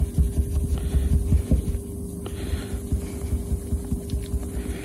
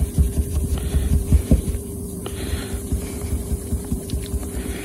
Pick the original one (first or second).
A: first